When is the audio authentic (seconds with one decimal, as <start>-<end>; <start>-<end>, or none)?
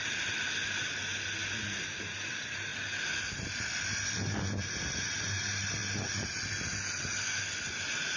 0.0-1.8; 2.7-4.8; 5.8-7.6